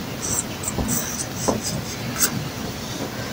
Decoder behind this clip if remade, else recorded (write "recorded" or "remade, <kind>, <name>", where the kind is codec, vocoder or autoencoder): recorded